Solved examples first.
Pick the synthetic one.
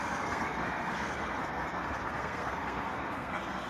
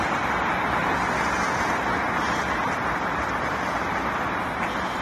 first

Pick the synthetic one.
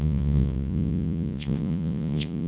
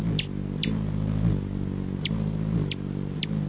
first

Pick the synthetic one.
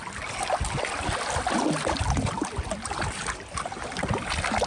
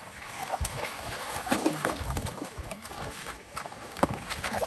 second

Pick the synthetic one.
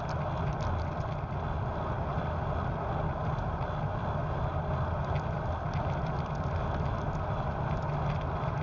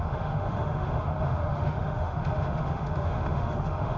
second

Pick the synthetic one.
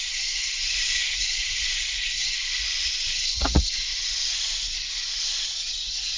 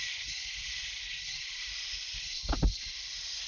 first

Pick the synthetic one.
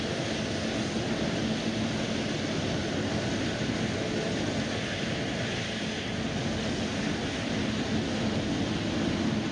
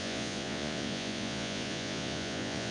second